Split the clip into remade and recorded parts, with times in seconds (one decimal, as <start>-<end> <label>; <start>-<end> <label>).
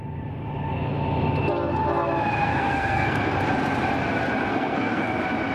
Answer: 0.0-2.4 recorded; 2.4-3.3 remade; 3.3-4.5 recorded; 4.5-5.1 remade; 5.1-5.5 recorded